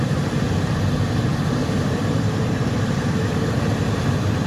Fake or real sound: fake